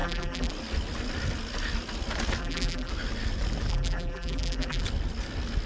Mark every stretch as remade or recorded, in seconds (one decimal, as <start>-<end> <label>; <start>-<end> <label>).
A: 0.0-0.5 remade; 0.5-2.4 recorded; 2.4-2.9 remade; 2.9-3.7 recorded; 3.7-4.8 remade; 4.8-5.7 recorded